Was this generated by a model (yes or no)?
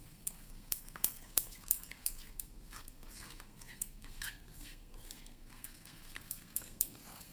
yes